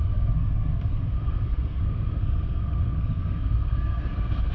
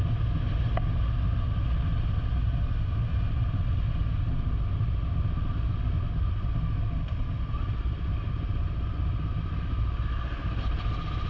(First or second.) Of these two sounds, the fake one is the first